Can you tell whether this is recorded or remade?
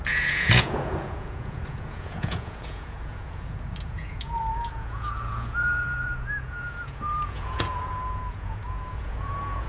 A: remade